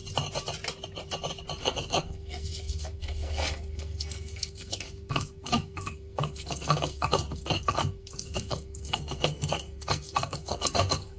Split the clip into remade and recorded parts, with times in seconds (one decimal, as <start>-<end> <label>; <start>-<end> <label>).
0.0-1.6 recorded; 1.6-11.2 remade